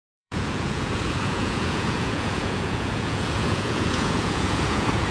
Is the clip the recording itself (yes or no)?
no